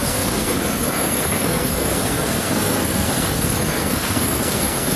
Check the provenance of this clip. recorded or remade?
remade